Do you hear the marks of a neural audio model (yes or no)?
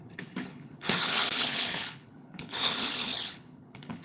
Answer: yes